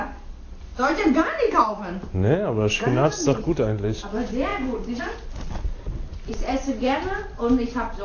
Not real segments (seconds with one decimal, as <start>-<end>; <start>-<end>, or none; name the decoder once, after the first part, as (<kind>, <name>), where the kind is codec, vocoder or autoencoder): none